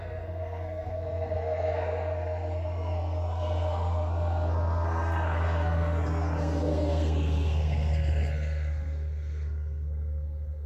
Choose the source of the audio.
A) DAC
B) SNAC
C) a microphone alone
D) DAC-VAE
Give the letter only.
B